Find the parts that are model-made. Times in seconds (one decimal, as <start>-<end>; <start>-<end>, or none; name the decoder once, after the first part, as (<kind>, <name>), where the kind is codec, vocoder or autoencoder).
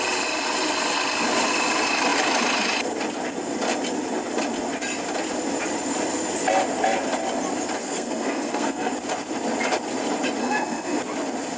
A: 7.8-8.9 (codec, SNAC); 10.4-11.0